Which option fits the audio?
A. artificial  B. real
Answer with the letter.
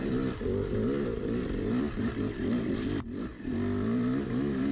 B